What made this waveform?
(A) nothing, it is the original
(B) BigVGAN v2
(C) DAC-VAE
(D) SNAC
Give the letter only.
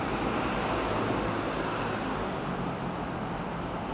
A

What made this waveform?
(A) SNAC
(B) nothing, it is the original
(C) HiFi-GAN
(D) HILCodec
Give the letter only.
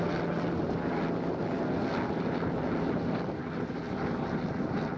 B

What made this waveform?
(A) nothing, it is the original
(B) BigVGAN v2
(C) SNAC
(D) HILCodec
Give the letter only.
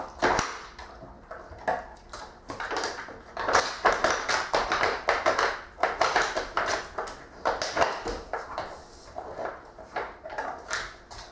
A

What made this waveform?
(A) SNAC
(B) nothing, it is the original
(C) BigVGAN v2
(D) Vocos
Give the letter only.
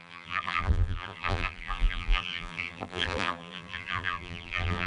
C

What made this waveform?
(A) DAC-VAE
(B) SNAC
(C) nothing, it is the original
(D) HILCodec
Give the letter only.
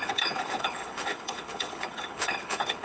D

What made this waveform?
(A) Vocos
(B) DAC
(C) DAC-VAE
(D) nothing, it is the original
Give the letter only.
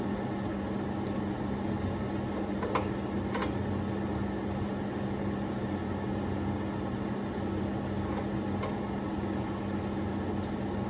D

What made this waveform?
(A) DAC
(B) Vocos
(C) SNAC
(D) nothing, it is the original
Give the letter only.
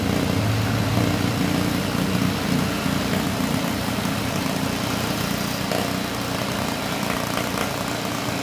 D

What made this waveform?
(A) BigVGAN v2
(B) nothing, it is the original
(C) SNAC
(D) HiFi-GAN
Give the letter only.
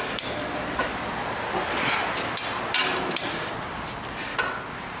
B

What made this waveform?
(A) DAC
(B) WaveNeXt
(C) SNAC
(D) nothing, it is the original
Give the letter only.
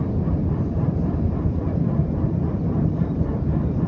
D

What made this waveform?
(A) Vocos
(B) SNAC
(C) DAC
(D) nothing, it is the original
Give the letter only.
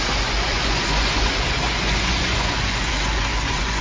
A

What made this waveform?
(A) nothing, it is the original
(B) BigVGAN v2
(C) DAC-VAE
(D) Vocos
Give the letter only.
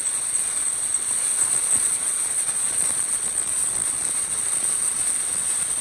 D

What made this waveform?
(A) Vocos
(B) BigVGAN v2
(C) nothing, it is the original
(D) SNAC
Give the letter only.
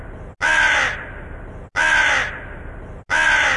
C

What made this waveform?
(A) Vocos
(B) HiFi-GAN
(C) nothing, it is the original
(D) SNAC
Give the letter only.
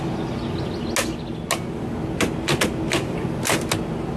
C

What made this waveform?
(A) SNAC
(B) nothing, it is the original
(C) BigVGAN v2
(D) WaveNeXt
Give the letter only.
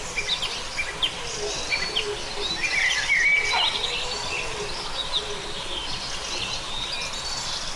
B